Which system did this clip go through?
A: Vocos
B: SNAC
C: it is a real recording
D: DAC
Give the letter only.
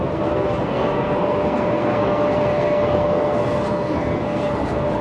B